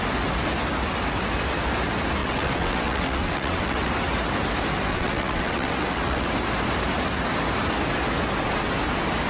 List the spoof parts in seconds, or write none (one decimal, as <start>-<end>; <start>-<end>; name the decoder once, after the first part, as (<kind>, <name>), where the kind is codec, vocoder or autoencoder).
2.2-3.9 (vocoder, WaveNeXt); 4.9-6.3